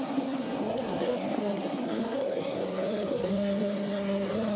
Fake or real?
fake